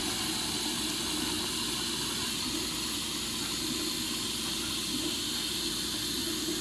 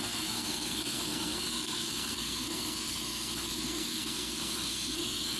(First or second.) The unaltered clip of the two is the first